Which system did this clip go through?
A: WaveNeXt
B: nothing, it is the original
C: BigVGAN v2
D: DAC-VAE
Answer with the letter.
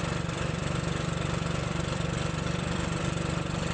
C